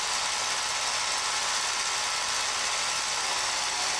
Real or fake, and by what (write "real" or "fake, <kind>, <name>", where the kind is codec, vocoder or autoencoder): real